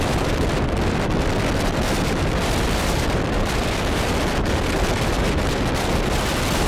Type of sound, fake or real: fake